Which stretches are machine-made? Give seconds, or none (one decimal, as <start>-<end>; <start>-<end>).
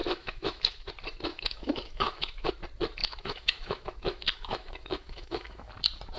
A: 0.0-0.9; 1.3-2.5; 3.0-5.7